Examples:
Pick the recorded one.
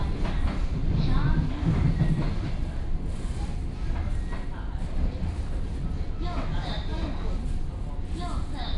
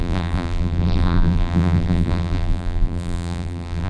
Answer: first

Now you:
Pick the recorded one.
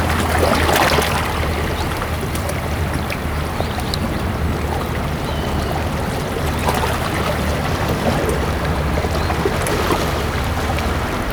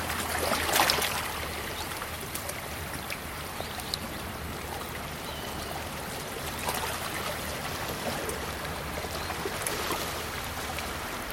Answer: first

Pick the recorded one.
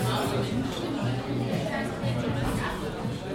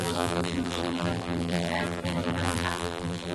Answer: first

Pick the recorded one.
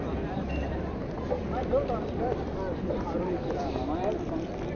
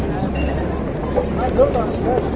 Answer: second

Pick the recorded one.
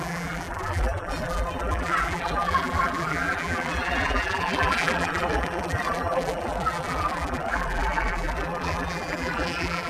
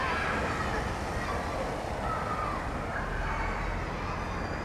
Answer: second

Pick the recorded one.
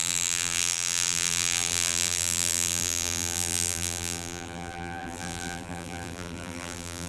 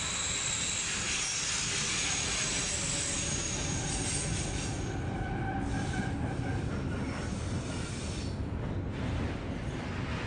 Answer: second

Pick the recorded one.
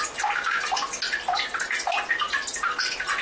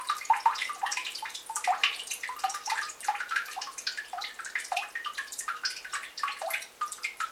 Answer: first